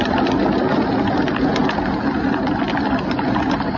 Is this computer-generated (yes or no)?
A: no